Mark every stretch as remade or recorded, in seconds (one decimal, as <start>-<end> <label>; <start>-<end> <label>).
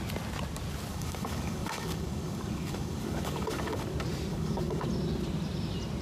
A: 0.0-0.9 recorded; 0.9-3.8 remade; 3.8-4.3 recorded; 4.3-4.9 remade; 4.9-6.0 recorded